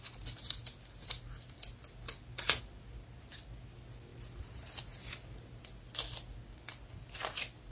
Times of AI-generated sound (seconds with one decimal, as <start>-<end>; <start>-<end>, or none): none